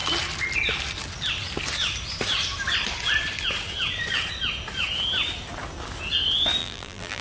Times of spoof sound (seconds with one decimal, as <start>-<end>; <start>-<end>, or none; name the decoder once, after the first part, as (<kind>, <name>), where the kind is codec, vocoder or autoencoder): 6.6-7.2 (vocoder, BigVGAN v2)

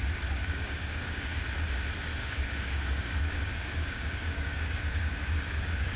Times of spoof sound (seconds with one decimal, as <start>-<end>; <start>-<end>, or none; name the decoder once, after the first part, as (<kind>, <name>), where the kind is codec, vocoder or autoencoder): 0.4-1.4 (codec, DAC); 2.2-6.0

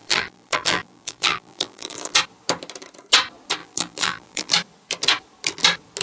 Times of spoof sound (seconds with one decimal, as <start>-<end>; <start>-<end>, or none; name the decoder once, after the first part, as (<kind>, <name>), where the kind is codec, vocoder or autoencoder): 0.0-2.1 (vocoder, BigVGAN v2); 3.6-4.5